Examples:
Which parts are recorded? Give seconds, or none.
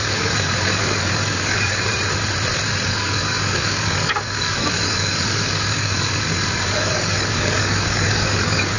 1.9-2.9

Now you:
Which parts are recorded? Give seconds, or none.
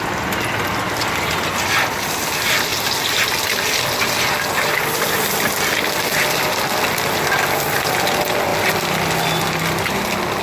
0.0-10.4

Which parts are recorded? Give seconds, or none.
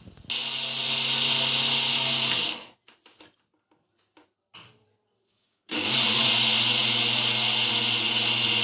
0.0-5.3; 6.2-8.6